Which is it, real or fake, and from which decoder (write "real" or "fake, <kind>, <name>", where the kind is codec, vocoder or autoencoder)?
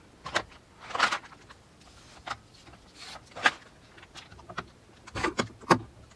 real